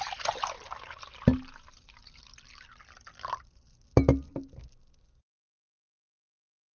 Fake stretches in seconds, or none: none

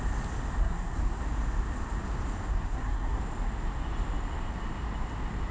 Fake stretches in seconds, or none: 0.6-1.2; 2.5-3.2

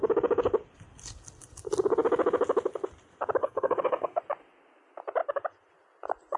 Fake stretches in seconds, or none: 3.4-4.2

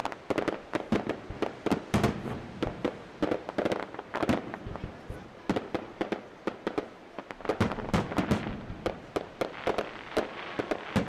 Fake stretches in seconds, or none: none

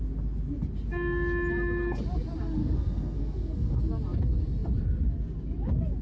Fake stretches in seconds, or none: 2.6-3.8

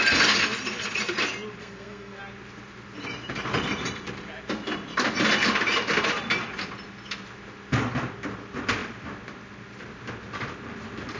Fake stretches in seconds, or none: 1.6-2.2

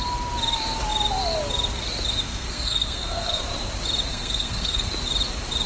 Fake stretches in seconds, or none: 2.3-3.4; 4.1-4.9